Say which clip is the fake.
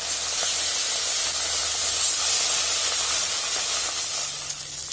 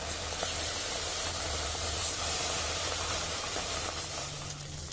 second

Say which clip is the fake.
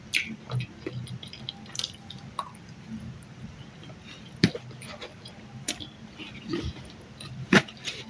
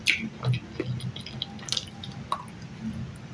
first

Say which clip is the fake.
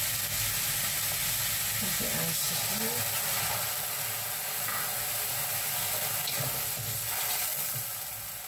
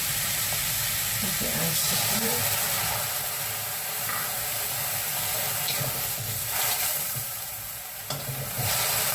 second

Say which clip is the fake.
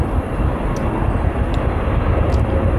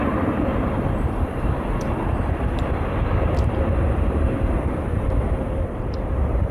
second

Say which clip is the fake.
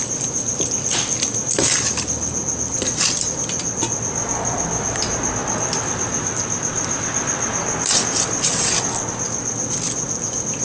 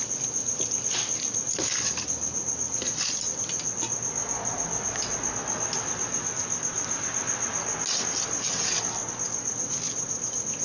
first